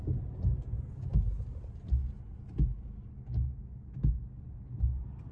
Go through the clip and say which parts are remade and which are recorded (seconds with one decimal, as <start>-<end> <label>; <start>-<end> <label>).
0.0-5.3 recorded

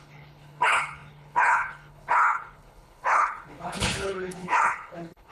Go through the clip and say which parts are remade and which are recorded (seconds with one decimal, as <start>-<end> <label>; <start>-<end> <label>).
0.0-5.3 remade